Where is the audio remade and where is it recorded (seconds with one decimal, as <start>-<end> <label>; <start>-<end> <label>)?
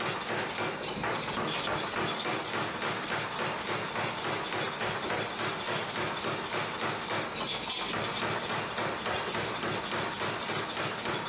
0.0-11.3 recorded